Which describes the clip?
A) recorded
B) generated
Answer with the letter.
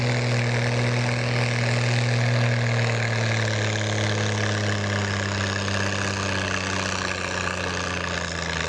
A